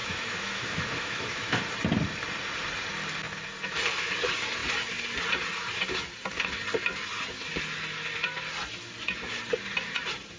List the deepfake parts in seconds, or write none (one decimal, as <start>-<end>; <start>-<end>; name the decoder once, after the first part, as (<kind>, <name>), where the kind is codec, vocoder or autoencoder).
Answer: 0.0-1.6 (autoencoder, DAC-VAE)